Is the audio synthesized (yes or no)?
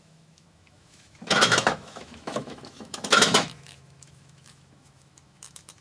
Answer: yes